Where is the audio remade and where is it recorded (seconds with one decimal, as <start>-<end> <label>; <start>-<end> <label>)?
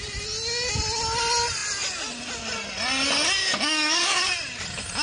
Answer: 0.0-3.4 recorded; 3.4-4.3 remade; 4.3-5.0 recorded